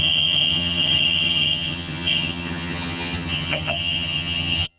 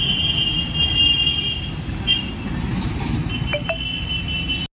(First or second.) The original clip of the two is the second